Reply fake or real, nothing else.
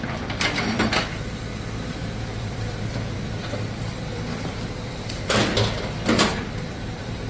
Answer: fake